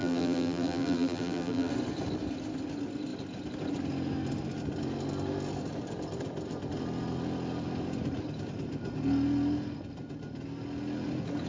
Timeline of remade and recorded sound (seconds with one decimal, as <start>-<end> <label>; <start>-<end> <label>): 0.0-1.7 remade; 1.7-11.5 recorded